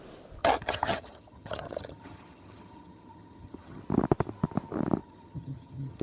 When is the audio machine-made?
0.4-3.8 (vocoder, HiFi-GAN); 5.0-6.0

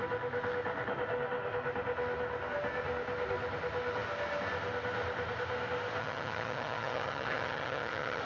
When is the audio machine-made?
6.0-8.2 (vocoder, HiFi-GAN)